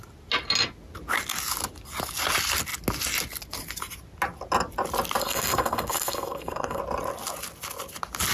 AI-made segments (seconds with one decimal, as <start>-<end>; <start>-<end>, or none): 5.2-6.8

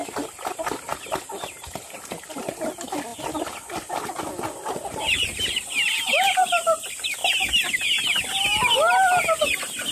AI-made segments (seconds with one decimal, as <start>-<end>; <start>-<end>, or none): 0.0-0.5; 3.1-4.2; 7.2-8.2

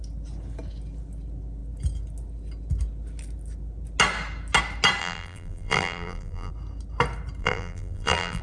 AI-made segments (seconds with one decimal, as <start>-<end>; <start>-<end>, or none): 5.0-6.5; 7.4-8.4

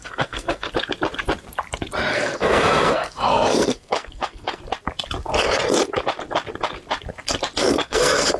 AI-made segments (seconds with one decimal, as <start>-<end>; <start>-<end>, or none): 0.0-0.7; 2.1-4.6; 7.6-8.4

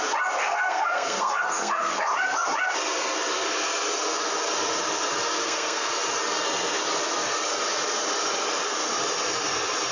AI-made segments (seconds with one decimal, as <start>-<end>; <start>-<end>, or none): 0.4-2.0; 5.4-5.9